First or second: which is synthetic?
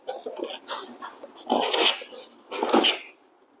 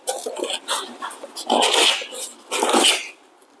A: second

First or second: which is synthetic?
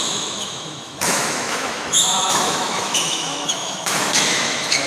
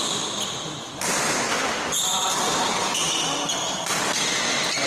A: first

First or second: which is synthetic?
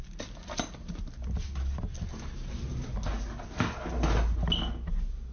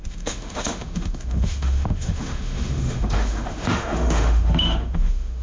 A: second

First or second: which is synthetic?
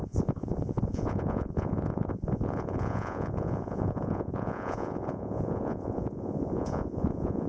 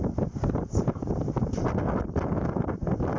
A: first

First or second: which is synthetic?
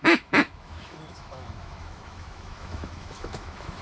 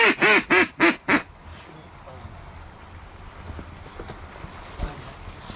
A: first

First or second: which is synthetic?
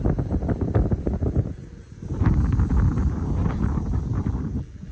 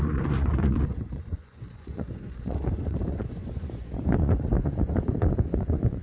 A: second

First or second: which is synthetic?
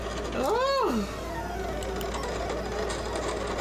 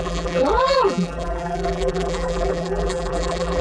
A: second